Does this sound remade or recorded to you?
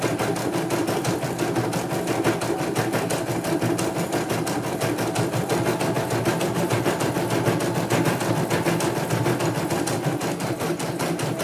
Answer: recorded